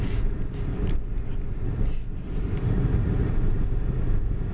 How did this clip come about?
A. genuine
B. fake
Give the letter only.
A